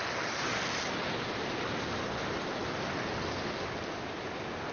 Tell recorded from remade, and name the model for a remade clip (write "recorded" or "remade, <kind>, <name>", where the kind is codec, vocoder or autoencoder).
recorded